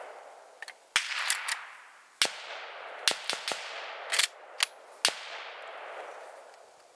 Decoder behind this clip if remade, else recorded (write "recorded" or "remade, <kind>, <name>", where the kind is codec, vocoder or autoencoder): recorded